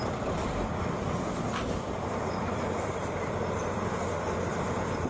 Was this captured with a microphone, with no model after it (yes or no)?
no